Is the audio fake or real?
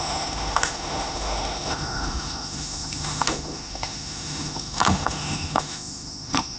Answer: fake